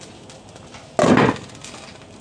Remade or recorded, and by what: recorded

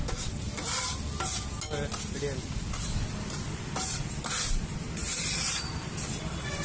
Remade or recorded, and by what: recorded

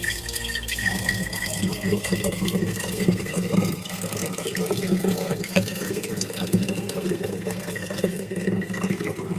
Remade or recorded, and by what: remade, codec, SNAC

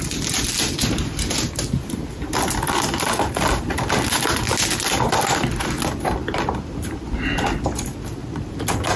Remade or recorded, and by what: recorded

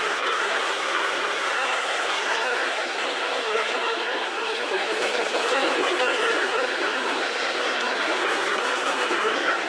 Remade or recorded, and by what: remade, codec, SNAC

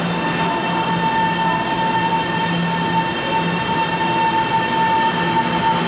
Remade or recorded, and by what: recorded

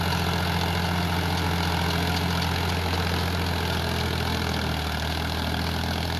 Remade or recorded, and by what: recorded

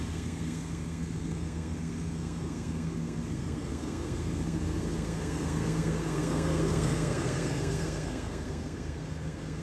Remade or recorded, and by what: remade, codec, SNAC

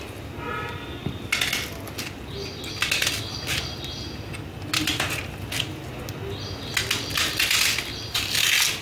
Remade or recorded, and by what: recorded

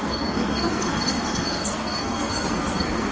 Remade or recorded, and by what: remade, codec, SNAC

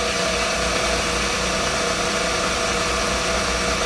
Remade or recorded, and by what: recorded